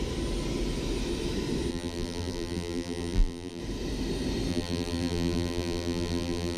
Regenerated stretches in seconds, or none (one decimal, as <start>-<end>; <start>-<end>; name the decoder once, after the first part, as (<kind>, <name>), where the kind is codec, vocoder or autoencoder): 1.7-3.6 (vocoder, BigVGAN v2); 4.5-6.6

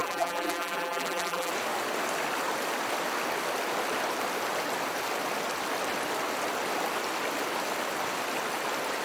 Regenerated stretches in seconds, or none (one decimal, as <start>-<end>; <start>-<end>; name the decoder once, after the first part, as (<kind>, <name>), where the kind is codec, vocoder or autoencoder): 0.0-1.5 (vocoder, BigVGAN v2)

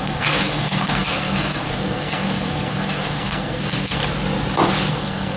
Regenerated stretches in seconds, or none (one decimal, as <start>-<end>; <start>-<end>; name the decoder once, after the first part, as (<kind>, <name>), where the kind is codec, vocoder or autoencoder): 0.0-4.0 (codec, SNAC); 4.9-5.4

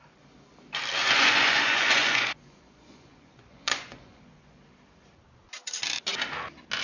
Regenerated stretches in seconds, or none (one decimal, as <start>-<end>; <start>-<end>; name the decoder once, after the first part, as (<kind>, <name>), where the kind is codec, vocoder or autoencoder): 1.0-4.6 (vocoder, Vocos)

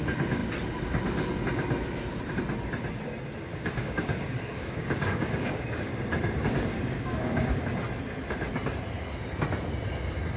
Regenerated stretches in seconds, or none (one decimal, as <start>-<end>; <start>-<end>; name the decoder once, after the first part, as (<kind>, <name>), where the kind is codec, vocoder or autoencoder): 3.5-5.9 (codec, DAC); 6.4-7.6